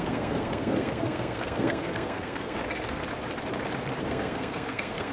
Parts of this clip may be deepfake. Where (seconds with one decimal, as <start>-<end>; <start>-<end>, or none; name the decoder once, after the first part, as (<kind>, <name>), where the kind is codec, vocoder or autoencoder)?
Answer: 0.0-2.6 (codec, SNAC); 4.0-5.1